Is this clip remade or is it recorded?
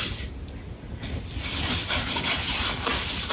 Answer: recorded